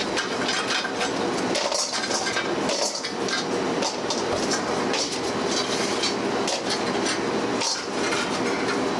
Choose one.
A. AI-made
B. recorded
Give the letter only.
B